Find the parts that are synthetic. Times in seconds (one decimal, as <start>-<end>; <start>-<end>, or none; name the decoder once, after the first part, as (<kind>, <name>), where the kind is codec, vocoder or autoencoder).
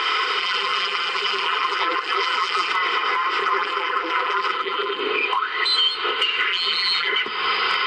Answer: 0.4-2.7 (vocoder, BigVGAN v2); 3.4-5.0; 6.5-7.1